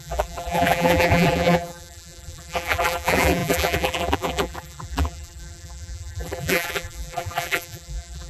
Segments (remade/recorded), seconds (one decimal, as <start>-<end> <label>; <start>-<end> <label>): 0.0-8.3 remade